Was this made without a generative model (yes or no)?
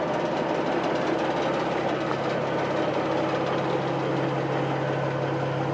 yes